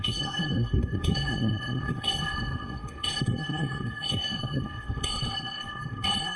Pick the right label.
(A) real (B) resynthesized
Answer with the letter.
B